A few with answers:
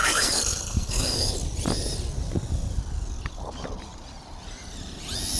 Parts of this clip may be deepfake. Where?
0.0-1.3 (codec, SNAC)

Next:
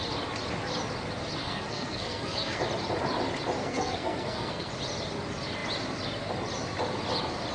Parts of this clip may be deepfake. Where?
1.4-2.6 (codec, SNAC); 3.6-4.7

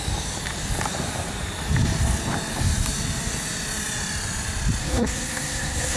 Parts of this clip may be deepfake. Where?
4.8-6.0 (codec, SNAC)

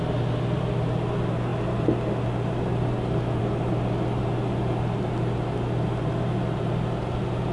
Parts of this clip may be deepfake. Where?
none